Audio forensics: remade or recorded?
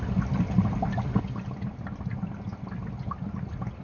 recorded